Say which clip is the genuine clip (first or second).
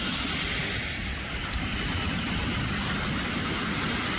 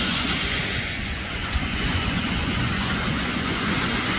first